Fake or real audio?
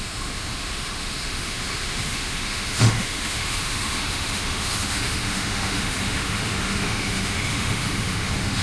fake